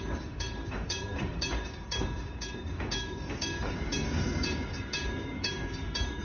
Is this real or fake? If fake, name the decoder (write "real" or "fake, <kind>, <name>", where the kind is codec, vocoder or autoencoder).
fake, codec, DAC